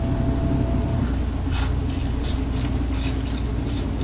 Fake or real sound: real